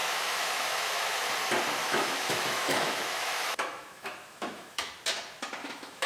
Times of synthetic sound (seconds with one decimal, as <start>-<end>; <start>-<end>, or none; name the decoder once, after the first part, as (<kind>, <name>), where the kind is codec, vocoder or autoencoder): 0.0-1.3 (autoencoder, DAC-VAE); 1.8-4.9; 5.6-6.1